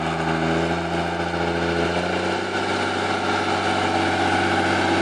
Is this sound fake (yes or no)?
no